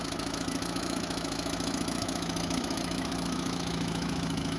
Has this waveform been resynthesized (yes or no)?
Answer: yes